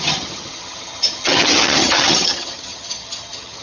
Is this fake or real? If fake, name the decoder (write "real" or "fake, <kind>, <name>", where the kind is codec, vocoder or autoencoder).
fake, vocoder, HiFi-GAN